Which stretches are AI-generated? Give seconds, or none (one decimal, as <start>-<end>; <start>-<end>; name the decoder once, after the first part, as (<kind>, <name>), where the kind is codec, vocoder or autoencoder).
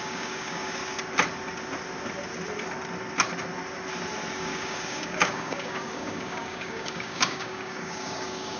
0.0-0.8 (codec, DAC); 4.3-8.6